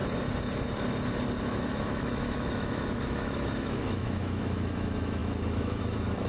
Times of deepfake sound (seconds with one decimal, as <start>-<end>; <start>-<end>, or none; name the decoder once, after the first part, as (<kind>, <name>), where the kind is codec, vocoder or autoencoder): 1.4-6.3 (autoencoder, DAC-VAE)